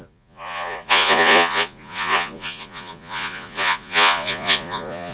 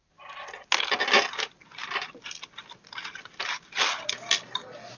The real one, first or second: second